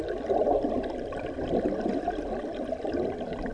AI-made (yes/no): no